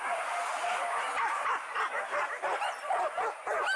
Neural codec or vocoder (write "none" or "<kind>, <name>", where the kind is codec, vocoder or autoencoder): none